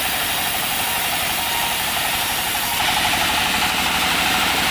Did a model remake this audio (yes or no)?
yes